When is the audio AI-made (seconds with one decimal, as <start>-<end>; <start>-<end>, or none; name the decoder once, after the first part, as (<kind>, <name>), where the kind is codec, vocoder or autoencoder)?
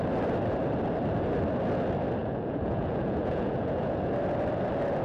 2.2-4.1 (vocoder, Vocos)